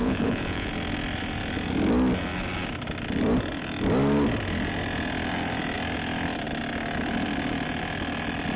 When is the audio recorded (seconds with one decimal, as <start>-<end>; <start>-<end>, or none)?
0.7-8.6